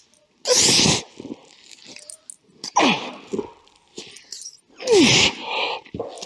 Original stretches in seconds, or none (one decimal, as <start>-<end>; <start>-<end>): 0.0-6.3